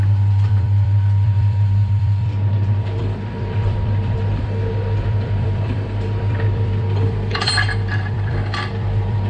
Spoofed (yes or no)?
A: yes